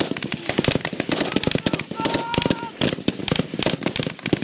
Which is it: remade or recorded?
remade